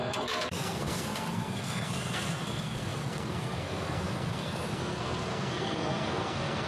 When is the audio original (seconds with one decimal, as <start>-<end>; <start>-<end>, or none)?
none